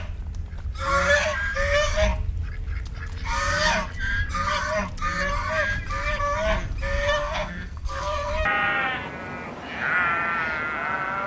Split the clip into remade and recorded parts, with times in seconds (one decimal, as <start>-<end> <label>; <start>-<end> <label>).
0.0-7.2 recorded; 7.2-8.3 remade; 8.3-11.3 recorded